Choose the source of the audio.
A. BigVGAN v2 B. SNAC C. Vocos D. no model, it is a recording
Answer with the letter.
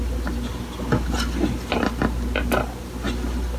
D